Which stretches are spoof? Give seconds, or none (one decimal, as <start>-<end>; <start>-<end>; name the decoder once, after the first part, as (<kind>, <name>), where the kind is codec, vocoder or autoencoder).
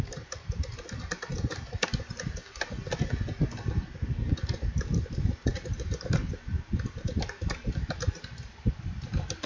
0.0-1.3 (vocoder, BigVGAN v2); 4.2-9.5